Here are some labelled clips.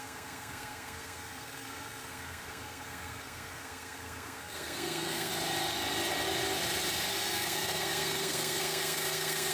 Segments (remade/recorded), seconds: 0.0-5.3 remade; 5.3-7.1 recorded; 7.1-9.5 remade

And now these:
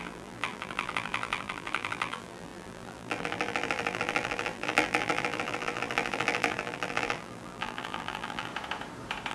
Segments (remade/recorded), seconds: 0.0-8.5 remade; 8.5-9.3 recorded

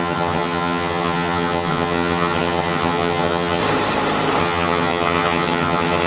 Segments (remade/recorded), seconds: 0.0-3.6 remade; 3.6-4.4 recorded; 4.4-6.1 remade

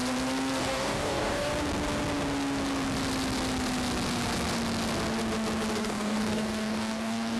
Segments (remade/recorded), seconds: 0.0-0.6 recorded; 0.6-1.5 remade; 1.5-5.8 recorded; 5.8-7.4 remade